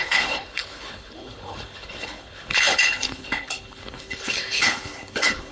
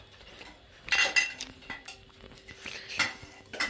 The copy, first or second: first